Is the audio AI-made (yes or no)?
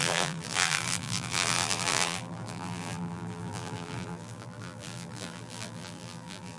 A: yes